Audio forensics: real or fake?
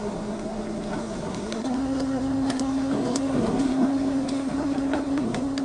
fake